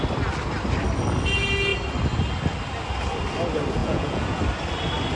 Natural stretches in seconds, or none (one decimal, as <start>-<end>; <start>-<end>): 0.0-3.8; 4.4-5.2